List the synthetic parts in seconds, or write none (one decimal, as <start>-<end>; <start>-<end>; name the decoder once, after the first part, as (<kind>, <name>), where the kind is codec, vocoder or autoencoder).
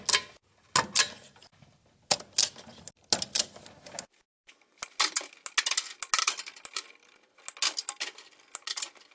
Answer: none